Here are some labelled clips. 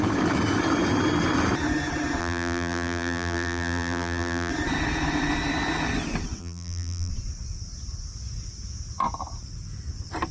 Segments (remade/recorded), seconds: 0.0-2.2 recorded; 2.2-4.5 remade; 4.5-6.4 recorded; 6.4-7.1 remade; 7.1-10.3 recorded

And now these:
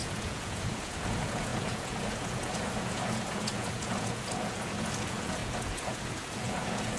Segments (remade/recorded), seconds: 0.0-7.0 remade

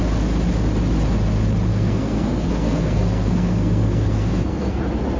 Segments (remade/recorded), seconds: 0.0-1.7 recorded; 1.7-4.8 remade; 4.8-5.2 recorded

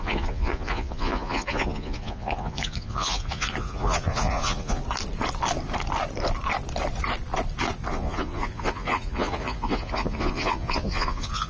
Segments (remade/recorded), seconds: 0.0-4.8 remade; 4.8-7.9 recorded; 7.9-11.5 remade

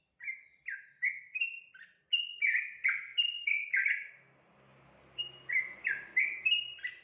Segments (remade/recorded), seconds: 0.0-7.0 recorded

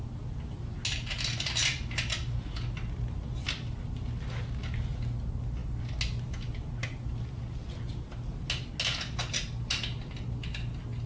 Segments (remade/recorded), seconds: 0.0-11.1 recorded

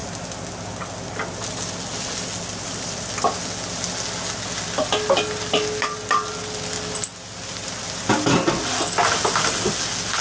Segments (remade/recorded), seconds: 0.0-10.2 recorded

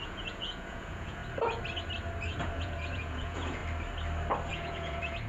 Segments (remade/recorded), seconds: 0.0-1.2 remade; 1.2-2.4 recorded; 2.4-3.6 remade; 3.6-4.5 recorded; 4.5-5.3 remade